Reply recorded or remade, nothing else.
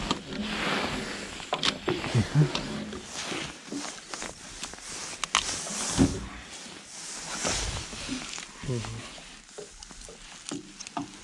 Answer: recorded